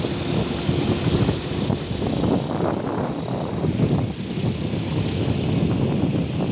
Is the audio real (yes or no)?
yes